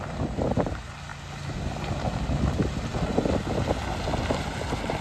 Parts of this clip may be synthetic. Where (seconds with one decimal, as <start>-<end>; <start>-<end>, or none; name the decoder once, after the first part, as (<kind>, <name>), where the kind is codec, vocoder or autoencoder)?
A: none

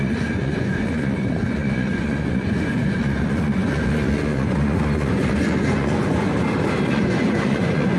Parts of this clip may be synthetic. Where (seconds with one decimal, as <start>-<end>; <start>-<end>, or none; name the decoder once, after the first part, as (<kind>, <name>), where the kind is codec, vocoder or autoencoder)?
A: 0.0-6.3 (vocoder, Vocos); 6.9-8.0

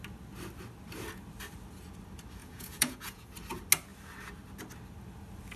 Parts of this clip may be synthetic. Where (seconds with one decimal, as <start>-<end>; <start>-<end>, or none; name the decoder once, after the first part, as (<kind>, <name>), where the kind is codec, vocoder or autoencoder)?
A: 2.4-3.3 (vocoder, Vocos)

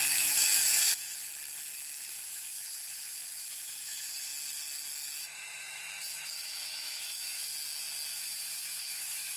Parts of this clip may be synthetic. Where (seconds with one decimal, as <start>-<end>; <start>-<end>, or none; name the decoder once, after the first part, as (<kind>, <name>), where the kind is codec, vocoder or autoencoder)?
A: 0.0-1.3 (autoencoder, DAC-VAE); 2.0-4.3; 5.2-7.4; 8.1-9.4

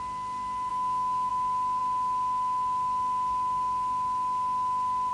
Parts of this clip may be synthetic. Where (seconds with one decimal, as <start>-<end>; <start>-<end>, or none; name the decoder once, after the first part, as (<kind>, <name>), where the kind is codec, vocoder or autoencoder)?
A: 0.7-1.3 (autoencoder, DAC-VAE)

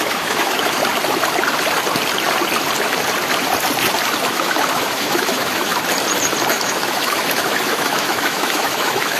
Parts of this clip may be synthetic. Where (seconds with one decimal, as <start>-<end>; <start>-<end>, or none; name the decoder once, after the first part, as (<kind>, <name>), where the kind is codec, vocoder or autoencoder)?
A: 0.0-0.8 (autoencoder, DAC-VAE); 4.3-5.7; 6.5-9.2

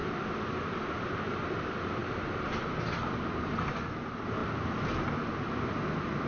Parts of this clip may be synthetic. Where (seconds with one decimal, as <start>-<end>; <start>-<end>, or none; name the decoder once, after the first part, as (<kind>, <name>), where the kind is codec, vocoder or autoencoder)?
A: none